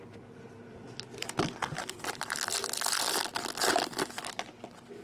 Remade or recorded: recorded